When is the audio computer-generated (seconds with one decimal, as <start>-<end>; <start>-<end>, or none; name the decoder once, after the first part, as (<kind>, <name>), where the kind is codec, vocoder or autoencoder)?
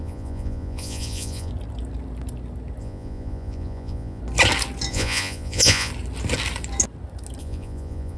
0.0-1.5 (vocoder, Vocos); 2.8-4.2; 4.9-5.9; 7.4-8.2